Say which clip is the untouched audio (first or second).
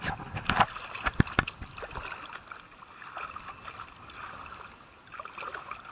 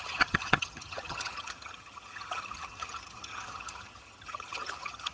first